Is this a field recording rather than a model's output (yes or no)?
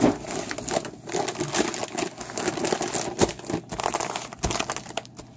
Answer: yes